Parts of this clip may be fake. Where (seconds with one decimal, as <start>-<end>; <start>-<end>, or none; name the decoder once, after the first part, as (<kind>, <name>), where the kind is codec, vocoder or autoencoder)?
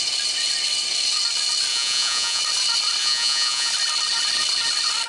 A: 1.7-2.4 (vocoder, Vocos); 3.0-3.7